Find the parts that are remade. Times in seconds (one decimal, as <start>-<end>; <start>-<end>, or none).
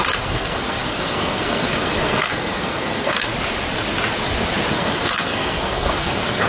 0.0-3.3; 4.7-6.5